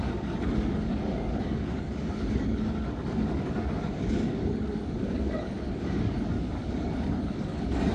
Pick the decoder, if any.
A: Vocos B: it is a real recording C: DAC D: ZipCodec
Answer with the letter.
C